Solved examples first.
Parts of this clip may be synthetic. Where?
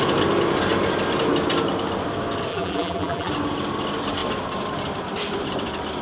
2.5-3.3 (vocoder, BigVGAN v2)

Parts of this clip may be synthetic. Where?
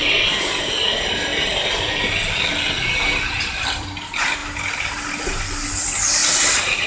0.0-4.4 (vocoder, BigVGAN v2); 5.2-6.9